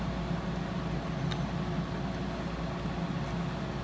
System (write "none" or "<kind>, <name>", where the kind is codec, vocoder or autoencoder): none